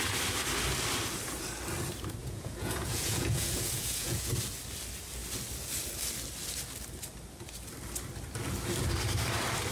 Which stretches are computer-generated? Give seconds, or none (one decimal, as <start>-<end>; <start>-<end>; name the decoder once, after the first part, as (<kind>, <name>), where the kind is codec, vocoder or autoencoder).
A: 2.2-4.3 (vocoder, Vocos)

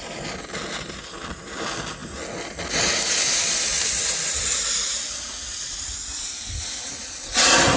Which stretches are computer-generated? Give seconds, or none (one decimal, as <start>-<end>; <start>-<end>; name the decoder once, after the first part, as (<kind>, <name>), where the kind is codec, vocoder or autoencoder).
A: none

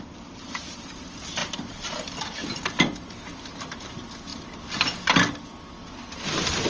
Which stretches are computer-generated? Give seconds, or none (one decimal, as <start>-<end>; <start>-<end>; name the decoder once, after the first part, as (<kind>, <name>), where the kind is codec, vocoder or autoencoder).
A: 1.4-2.5 (vocoder, BigVGAN v2)

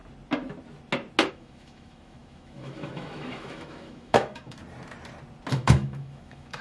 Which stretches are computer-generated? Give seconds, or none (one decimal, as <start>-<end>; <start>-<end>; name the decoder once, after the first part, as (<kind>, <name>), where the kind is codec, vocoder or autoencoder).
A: 1.3-4.6 (autoencoder, DAC-VAE); 5.5-6.6

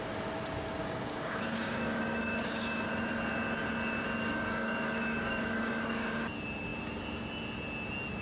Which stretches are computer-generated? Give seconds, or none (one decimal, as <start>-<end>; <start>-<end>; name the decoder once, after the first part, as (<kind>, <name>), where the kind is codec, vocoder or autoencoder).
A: 0.8-2.8 (codec, DAC); 4.2-6.2

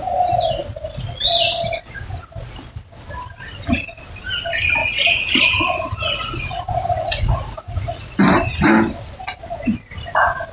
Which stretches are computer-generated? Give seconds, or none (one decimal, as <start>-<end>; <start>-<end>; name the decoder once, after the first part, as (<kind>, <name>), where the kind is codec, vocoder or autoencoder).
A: 4.8-8.2 (vocoder, Vocos)

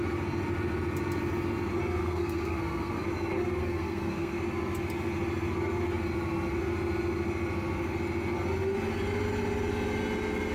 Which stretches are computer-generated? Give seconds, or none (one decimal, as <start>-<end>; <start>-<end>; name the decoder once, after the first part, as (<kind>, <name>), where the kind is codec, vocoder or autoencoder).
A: 2.0-3.0 (codec, SNAC); 3.6-4.4